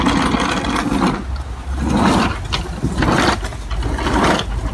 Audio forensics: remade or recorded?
recorded